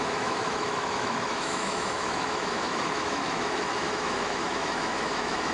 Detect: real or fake fake